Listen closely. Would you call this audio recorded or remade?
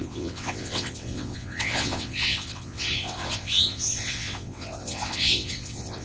remade